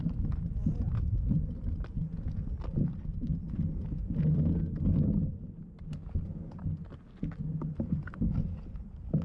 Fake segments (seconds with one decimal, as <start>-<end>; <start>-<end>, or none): none